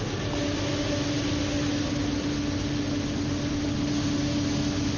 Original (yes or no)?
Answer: yes